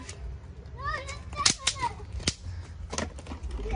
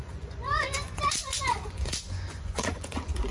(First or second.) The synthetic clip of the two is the second